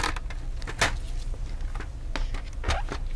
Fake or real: real